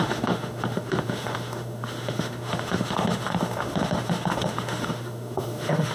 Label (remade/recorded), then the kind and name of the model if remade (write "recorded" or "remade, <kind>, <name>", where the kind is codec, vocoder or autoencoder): remade, autoencoder, DAC-VAE